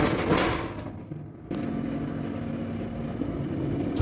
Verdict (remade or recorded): recorded